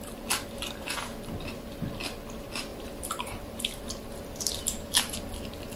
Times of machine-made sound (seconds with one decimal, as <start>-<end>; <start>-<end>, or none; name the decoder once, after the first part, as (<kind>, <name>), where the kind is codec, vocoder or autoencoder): 2.7-5.3 (vocoder, BigVGAN v2)